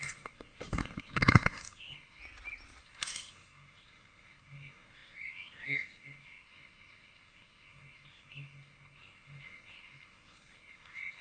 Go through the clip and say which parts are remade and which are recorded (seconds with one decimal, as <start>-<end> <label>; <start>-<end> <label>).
0.0-2.2 remade; 2.2-2.8 recorded; 2.8-11.2 remade